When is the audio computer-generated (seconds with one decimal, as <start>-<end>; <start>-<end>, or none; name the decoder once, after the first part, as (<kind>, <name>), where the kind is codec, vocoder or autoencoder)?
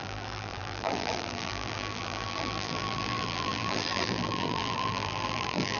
0.0-5.8 (vocoder, BigVGAN v2)